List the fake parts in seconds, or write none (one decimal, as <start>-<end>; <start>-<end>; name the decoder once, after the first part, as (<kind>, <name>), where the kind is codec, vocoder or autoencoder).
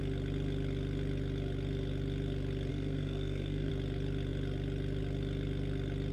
2.7-3.7 (codec, SNAC)